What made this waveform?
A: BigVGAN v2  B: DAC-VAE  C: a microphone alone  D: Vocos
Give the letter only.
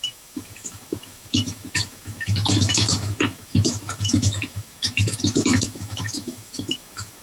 B